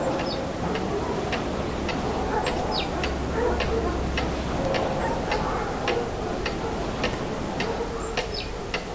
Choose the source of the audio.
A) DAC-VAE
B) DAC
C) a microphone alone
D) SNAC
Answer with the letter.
C